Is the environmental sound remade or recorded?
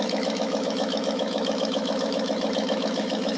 remade